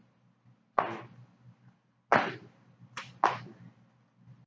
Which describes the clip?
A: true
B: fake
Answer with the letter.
A